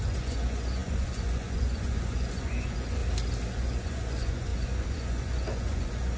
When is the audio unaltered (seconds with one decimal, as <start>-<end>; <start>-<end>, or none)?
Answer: 3.0-3.5